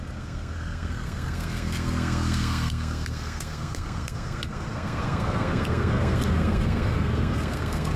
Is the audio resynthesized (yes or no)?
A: yes